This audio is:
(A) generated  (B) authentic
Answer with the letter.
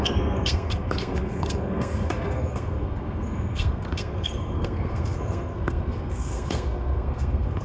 A